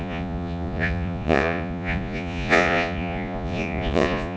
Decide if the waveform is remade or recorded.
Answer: remade